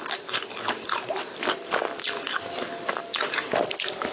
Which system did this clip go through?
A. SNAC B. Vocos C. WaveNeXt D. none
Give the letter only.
D